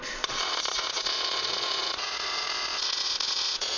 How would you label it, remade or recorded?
remade